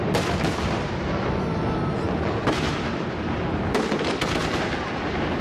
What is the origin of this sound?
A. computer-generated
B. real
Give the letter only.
B